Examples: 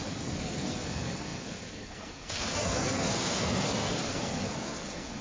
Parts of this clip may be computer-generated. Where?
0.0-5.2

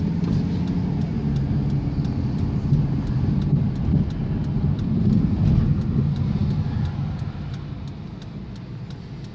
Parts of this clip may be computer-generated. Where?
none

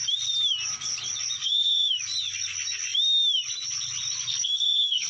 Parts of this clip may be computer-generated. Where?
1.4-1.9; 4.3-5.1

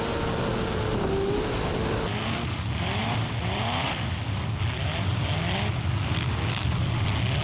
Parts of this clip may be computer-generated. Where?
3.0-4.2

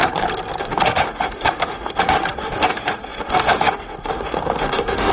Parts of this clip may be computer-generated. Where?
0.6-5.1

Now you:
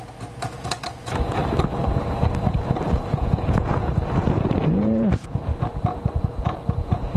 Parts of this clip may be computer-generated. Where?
0.0-1.4; 3.1-5.5; 6.2-7.2

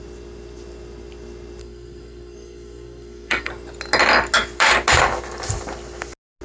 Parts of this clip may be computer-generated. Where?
1.6-3.5

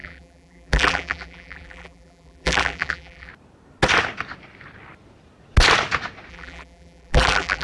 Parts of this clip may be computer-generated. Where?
0.0-3.3; 6.3-7.6